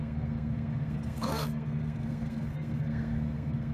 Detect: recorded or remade remade